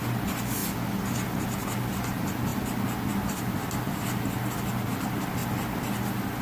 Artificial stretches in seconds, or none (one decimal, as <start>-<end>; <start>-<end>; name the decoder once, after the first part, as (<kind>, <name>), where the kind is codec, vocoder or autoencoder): none